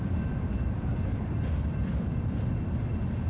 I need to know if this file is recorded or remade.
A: recorded